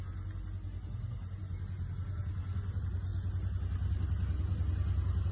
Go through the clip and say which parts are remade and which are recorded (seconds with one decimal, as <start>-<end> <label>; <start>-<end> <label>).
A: 0.0-5.3 recorded